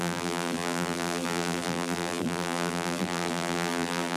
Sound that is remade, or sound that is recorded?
remade